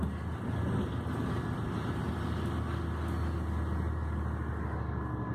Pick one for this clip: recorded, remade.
recorded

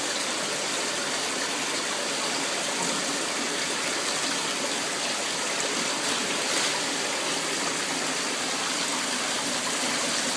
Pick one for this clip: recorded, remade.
recorded